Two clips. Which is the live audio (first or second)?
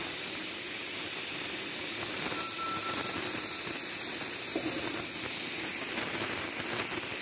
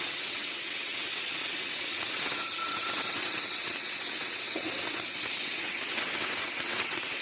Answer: first